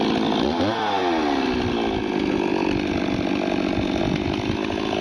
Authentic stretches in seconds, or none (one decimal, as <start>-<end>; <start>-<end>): 0.0-5.0